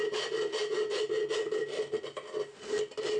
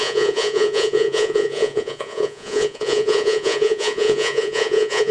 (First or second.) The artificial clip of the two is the second